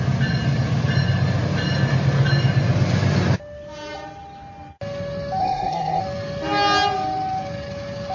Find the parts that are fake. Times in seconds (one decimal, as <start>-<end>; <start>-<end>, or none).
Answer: 5.4-6.0